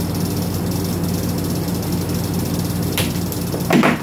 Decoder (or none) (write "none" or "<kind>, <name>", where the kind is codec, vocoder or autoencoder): none